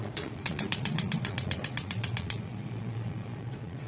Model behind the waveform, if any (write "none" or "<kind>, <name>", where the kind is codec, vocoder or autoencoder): vocoder, Vocos